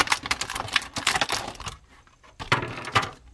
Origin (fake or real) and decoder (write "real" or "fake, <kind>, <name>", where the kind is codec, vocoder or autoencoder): fake, vocoder, BigVGAN v2